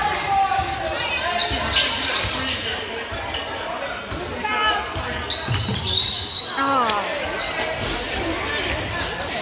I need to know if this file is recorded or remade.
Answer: recorded